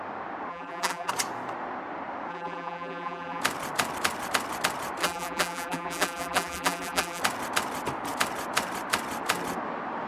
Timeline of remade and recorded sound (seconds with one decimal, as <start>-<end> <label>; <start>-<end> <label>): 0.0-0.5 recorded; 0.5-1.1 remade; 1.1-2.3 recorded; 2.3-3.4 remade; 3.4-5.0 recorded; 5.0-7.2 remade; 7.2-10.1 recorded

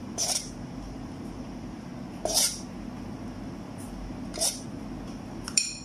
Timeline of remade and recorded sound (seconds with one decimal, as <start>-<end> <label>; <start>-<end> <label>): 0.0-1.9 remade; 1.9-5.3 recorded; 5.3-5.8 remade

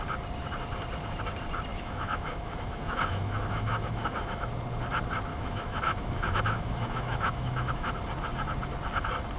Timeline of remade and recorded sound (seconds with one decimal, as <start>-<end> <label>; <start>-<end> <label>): 0.0-1.7 recorded; 1.7-4.5 remade; 4.5-5.3 recorded; 5.3-7.9 remade; 7.9-9.4 recorded